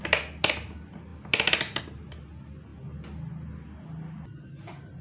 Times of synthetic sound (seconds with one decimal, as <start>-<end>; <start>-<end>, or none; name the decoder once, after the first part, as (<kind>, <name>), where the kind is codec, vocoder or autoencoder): none